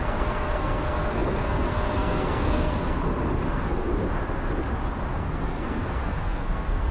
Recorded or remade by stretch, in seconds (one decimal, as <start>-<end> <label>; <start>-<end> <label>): 0.0-3.0 remade; 3.0-3.5 recorded; 3.5-3.9 remade; 3.9-5.1 recorded; 5.1-6.9 remade